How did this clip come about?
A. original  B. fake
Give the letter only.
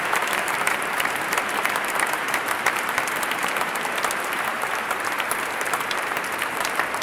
B